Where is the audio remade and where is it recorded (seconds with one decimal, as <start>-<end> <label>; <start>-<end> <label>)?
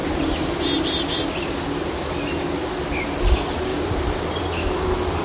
0.0-1.1 remade; 1.1-3.7 recorded; 3.7-4.4 remade; 4.4-5.2 recorded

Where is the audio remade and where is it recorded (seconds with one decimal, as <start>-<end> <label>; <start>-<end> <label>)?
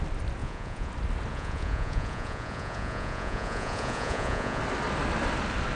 0.0-0.4 recorded; 0.4-0.9 remade; 0.9-1.3 recorded; 1.3-4.6 remade; 4.6-5.8 recorded